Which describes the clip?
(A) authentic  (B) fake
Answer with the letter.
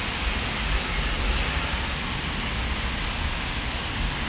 A